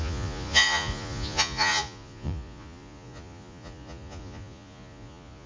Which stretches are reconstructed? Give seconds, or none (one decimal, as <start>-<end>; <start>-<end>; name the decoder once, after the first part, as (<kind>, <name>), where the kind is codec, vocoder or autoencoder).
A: 0.0-5.5 (vocoder, Vocos)